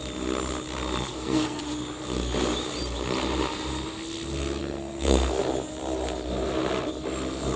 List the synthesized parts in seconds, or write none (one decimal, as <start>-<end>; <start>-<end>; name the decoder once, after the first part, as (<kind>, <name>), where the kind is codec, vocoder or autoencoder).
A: 1.1-1.6 (codec, SNAC); 4.6-5.4